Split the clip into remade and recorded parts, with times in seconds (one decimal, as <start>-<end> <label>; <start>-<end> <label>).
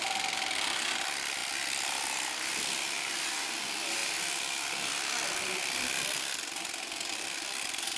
0.0-8.0 recorded